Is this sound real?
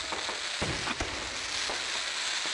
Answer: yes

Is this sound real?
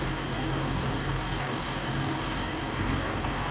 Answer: no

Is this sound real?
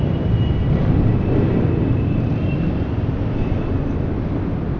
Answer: yes